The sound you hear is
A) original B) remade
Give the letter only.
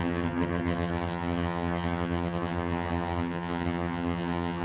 B